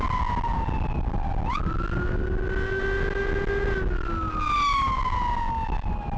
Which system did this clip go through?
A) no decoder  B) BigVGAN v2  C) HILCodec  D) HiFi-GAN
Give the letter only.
A